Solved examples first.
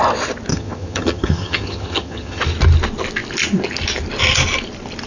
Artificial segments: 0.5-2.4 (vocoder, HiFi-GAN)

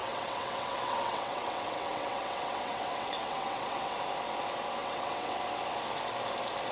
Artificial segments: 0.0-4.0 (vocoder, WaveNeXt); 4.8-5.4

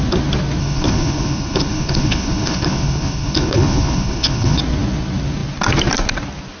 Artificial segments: 0.6-4.6 (codec, HILCodec)

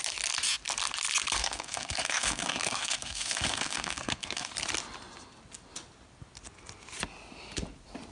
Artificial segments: 1.4-4.5 (codec, SNAC)

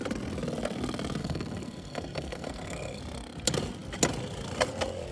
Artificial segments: 1.2-3.0 (codec, SNAC)

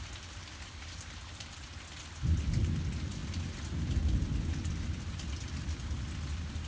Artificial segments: none

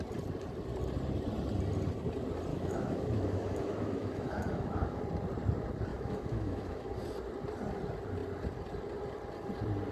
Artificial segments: 2.5-5.0 (autoencoder, DAC-VAE); 5.9-6.9

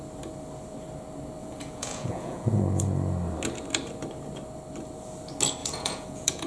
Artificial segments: 1.4-2.6 (vocoder, Vocos); 5.6-6.5